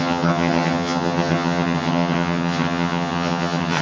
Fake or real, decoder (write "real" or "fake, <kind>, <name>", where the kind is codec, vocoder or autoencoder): fake, vocoder, HiFi-GAN